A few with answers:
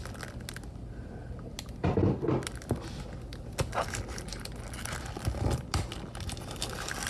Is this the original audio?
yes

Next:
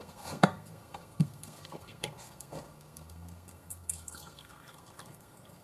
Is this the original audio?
no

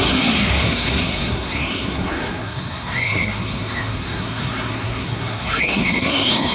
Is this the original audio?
no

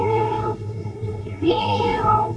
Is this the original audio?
no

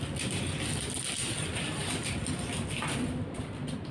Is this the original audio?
yes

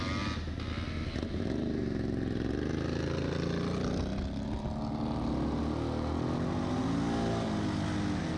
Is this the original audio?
yes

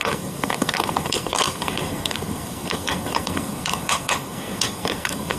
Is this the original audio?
no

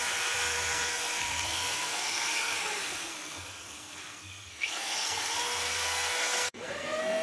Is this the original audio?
no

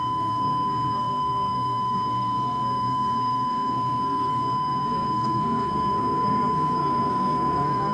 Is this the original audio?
no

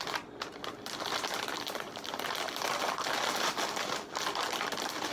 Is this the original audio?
yes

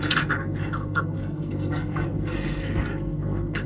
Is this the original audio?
no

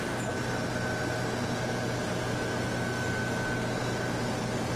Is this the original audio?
yes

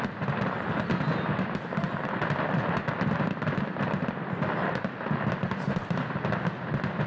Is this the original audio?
yes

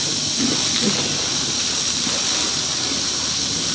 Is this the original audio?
yes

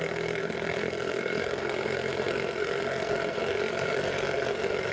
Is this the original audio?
no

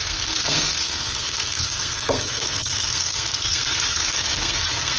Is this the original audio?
no